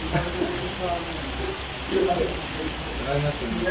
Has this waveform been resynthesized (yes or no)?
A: no